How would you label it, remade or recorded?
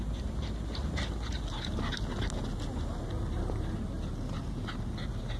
recorded